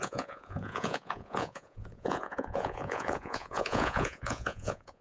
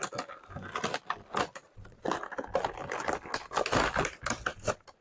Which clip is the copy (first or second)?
first